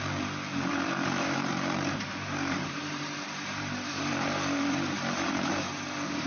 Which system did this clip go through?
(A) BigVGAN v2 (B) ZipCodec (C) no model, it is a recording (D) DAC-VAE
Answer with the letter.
A